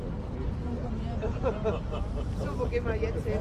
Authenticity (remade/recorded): recorded